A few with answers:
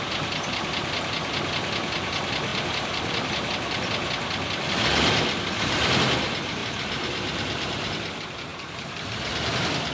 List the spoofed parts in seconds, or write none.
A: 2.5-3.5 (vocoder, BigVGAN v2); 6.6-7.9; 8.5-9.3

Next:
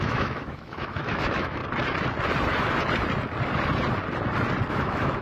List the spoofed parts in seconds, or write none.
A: 0.0-1.6 (autoencoder, DAC-VAE); 4.7-5.2

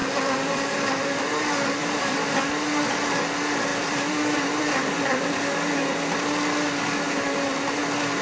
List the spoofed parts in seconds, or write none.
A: 0.0-1.2 (vocoder, BigVGAN v2); 1.8-2.3; 3.7-5.4

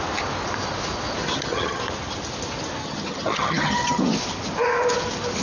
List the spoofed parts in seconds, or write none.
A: 1.2-1.8 (vocoder, HiFi-GAN); 2.8-4.0

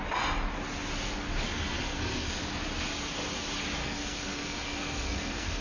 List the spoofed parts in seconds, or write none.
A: 1.8-2.4 (codec, SNAC); 3.8-5.6